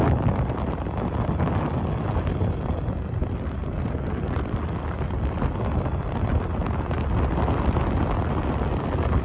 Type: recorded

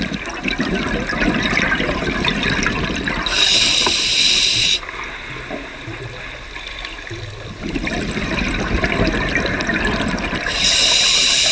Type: recorded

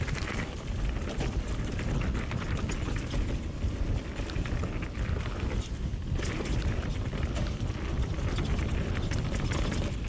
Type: recorded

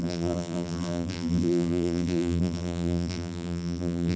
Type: remade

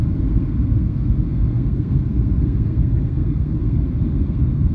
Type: remade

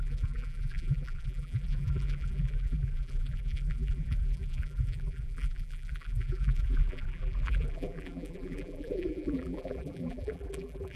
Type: remade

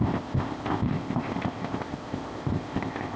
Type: remade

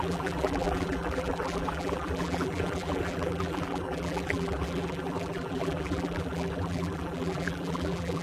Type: remade